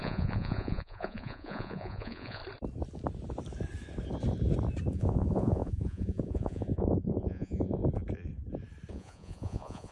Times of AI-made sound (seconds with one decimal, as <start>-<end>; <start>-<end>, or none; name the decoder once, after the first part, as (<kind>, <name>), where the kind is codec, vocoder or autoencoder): 0.0-2.4 (vocoder, Vocos); 4.9-7.8; 8.9-9.9